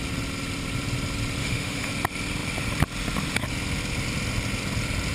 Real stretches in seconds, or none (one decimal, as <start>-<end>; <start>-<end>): 0.0-1.4; 1.9-5.1